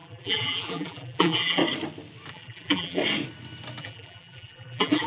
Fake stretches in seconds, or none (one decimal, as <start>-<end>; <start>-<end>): 0.0-1.6; 2.3-3.0; 3.8-5.1